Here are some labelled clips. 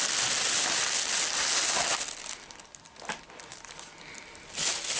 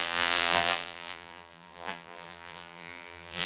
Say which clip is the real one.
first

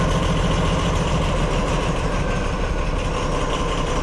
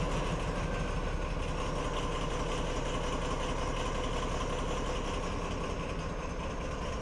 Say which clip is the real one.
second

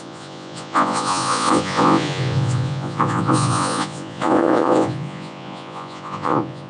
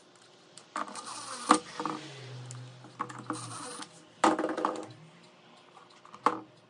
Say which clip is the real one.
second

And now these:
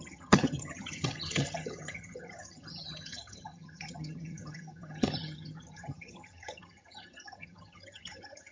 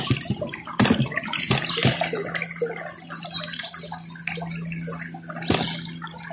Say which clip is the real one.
second